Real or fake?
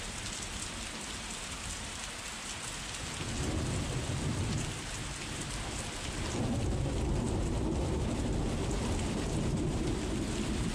real